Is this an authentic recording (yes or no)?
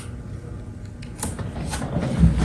yes